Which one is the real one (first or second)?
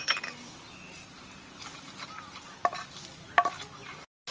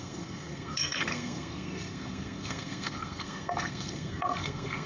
first